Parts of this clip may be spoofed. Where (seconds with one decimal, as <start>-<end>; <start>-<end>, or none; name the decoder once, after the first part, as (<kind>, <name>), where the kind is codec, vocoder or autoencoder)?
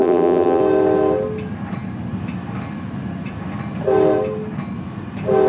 0.0-0.6 (vocoder, BigVGAN v2)